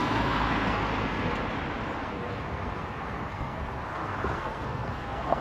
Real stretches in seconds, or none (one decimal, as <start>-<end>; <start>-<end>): 1.4-2.0